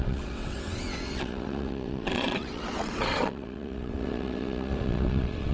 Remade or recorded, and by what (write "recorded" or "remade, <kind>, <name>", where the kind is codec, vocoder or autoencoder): remade, vocoder, WaveNeXt